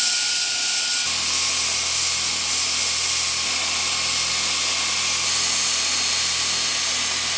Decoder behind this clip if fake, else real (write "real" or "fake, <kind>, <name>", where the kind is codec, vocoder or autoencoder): real